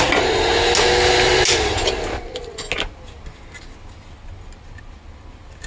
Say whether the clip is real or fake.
real